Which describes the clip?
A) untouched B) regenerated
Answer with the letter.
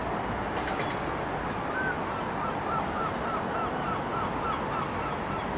A